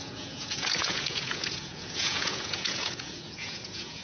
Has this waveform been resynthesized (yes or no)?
yes